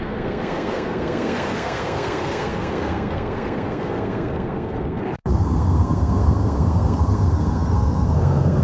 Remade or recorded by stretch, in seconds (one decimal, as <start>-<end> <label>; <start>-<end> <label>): 0.0-8.6 remade